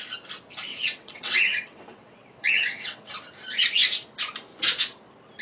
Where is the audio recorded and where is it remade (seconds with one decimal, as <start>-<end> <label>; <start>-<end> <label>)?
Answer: 0.0-0.7 recorded; 0.7-3.1 remade; 3.1-5.4 recorded